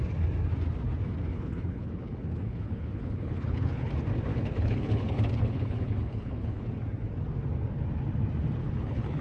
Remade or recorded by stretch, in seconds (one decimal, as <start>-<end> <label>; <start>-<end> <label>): 0.0-1.3 recorded; 1.3-3.9 remade; 3.9-4.3 recorded; 4.3-6.7 remade; 6.7-8.6 recorded; 8.6-9.2 remade